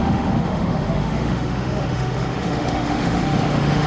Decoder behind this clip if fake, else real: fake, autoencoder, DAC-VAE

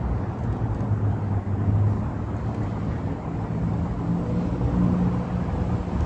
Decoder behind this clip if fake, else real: real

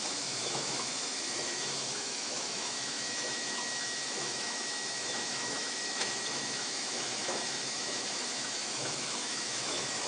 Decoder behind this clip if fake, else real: fake, autoencoder, DAC-VAE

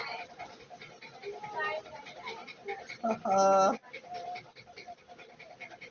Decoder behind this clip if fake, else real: real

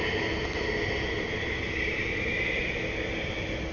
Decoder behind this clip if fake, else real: real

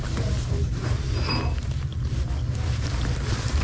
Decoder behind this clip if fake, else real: real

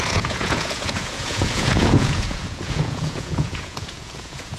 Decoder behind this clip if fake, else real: fake, vocoder, Vocos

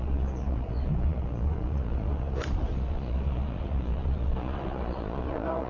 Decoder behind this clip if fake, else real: fake, vocoder, Vocos